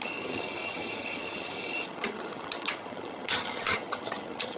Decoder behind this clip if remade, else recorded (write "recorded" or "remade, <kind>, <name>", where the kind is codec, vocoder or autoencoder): remade, vocoder, HiFi-GAN